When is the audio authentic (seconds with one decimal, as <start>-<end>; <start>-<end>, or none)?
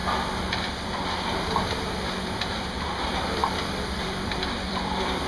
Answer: 0.0-2.5